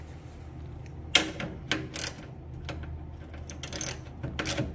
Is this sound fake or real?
real